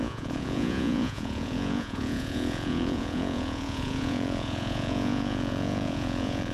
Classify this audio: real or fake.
fake